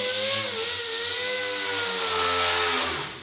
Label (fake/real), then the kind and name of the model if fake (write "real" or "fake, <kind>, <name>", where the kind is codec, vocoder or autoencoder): real